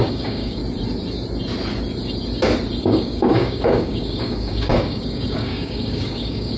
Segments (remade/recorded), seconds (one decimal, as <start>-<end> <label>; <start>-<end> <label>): 0.0-0.6 remade; 0.6-2.8 recorded; 2.8-6.6 remade